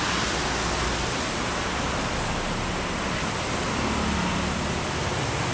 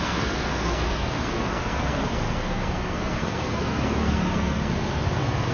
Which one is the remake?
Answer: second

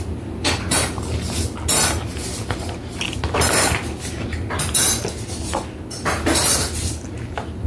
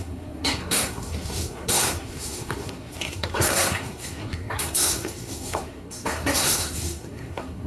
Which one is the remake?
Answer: second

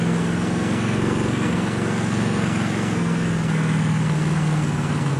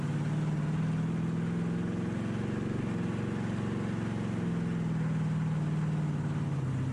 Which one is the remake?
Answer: first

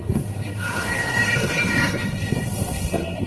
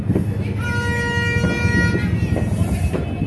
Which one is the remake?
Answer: first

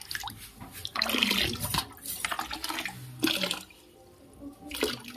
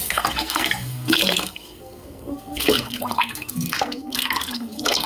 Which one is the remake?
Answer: second